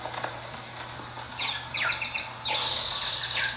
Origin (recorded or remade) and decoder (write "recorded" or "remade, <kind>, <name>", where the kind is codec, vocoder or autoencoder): recorded